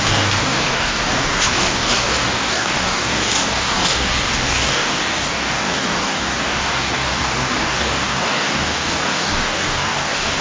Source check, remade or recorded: remade